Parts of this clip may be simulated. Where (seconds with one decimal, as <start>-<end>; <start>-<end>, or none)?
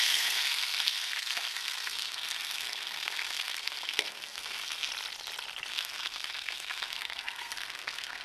0.0-4.9; 5.7-8.2